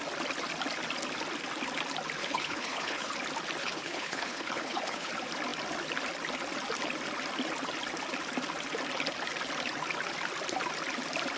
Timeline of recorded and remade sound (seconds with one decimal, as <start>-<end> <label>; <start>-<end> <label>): 0.0-2.2 recorded; 2.2-3.1 remade; 3.1-3.6 recorded; 3.6-5.1 remade; 5.1-11.4 recorded